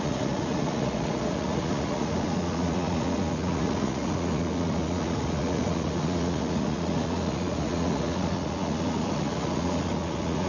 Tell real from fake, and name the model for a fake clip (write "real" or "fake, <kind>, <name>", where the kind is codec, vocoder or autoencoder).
fake, vocoder, Vocos